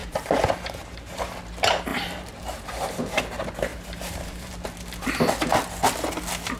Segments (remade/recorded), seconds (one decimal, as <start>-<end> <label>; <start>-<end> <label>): 0.0-1.2 remade; 1.2-1.9 recorded; 1.9-3.2 remade; 3.2-3.7 recorded; 3.7-4.5 remade; 4.5-6.6 recorded